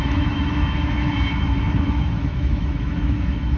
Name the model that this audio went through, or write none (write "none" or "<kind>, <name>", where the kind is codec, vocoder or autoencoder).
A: autoencoder, DAC-VAE